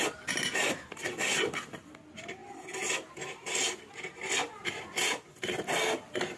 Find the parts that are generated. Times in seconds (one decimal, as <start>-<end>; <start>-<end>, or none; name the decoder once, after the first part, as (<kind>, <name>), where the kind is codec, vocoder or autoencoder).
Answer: none